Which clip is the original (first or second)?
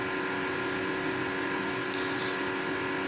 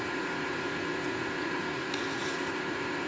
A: first